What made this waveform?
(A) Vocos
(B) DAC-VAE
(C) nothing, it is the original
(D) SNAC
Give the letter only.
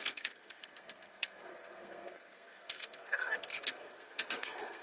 D